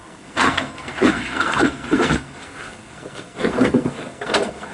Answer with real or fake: fake